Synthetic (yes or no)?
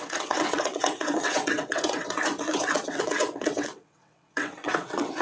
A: yes